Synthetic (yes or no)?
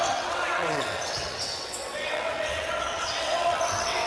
yes